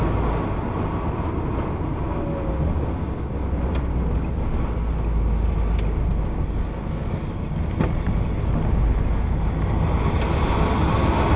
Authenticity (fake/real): real